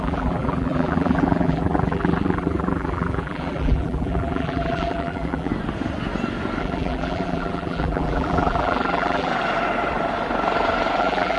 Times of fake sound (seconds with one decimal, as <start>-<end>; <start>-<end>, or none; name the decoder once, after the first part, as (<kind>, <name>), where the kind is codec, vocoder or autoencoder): 0.0-5.5 (vocoder, BigVGAN v2); 6.6-9.3; 11.0-11.4